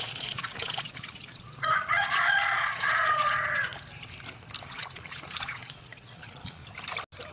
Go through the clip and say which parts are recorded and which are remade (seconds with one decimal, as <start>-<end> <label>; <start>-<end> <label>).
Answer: 0.0-3.7 remade; 3.7-4.6 recorded; 4.6-6.6 remade; 6.6-7.3 recorded